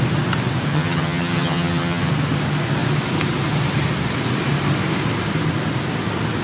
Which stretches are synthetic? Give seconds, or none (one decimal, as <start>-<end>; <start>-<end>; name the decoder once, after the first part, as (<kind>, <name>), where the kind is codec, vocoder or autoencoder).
0.7-2.1 (vocoder, HiFi-GAN)